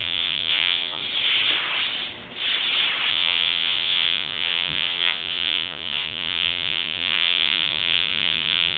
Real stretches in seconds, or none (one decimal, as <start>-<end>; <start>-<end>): 1.0-3.1